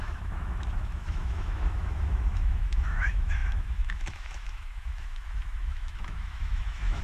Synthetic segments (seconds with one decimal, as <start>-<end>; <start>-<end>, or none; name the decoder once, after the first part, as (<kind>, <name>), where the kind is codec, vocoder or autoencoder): 0.0-7.0 (autoencoder, DAC-VAE)